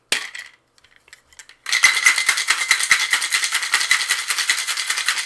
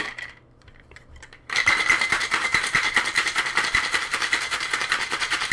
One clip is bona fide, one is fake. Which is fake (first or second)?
second